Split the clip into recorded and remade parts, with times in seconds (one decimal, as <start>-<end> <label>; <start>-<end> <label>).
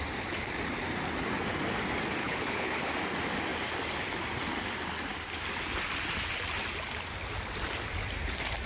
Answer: 0.0-2.2 recorded; 2.2-2.9 remade; 2.9-8.7 recorded